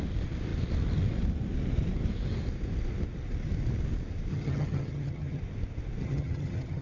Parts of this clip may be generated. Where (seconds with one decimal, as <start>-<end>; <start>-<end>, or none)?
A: 4.3-5.4; 6.0-6.8

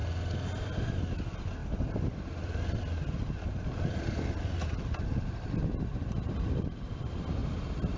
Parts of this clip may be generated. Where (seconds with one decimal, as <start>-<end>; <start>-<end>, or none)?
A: none

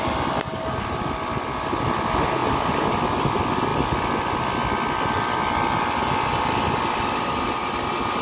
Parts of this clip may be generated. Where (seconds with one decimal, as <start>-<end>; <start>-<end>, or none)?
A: none

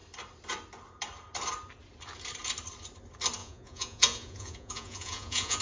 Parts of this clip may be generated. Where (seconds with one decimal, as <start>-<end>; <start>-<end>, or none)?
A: 3.4-5.6

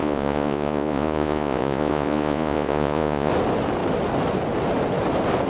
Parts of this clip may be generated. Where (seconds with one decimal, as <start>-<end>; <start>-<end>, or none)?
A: 0.0-3.3

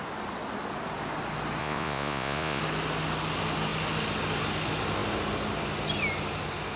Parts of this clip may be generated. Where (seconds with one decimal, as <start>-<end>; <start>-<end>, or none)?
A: 1.6-2.6

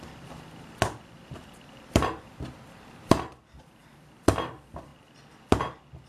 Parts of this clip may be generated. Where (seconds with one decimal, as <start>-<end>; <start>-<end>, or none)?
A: 0.0-4.9

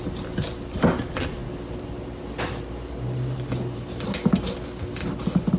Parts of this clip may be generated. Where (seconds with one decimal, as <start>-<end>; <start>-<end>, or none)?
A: none